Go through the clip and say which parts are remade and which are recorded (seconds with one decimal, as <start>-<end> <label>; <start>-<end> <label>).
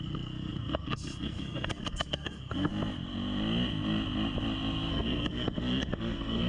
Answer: 0.0-2.7 remade; 2.7-4.9 recorded; 4.9-6.5 remade